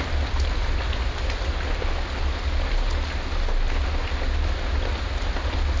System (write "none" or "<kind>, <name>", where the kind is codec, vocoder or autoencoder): none